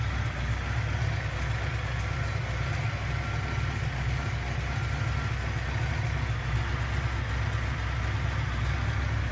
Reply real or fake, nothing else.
real